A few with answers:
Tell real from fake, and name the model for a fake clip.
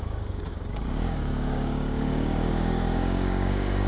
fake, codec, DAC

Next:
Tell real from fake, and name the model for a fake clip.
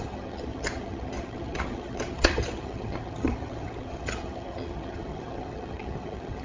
fake, vocoder, HiFi-GAN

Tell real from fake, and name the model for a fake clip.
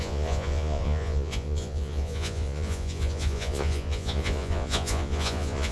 fake, vocoder, Vocos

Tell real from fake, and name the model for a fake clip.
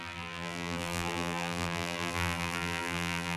fake, vocoder, BigVGAN v2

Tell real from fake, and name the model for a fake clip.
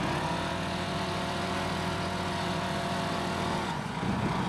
fake, vocoder, Vocos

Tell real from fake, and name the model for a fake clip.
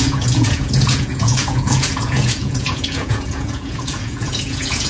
fake, vocoder, Vocos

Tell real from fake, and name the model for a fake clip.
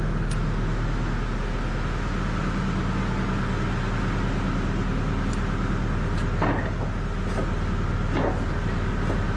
real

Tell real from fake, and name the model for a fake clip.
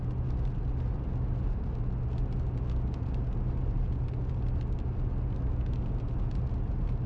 real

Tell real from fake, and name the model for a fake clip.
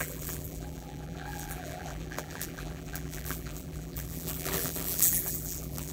fake, vocoder, BigVGAN v2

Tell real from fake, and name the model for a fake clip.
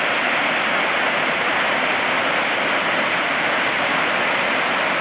real